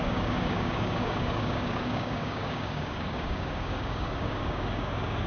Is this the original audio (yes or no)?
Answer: no